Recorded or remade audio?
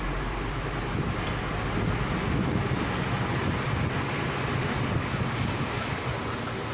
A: recorded